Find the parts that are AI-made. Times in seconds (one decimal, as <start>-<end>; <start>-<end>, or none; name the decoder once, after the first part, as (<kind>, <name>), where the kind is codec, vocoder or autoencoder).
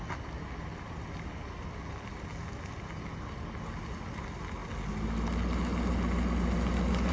none